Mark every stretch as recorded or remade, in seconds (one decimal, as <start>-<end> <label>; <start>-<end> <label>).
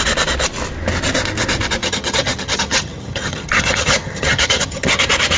0.0-1.8 recorded; 1.8-5.0 remade; 5.0-5.4 recorded